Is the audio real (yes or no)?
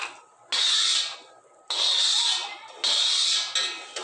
yes